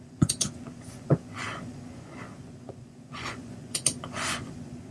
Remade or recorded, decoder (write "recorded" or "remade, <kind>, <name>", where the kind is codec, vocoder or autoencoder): remade, vocoder, Vocos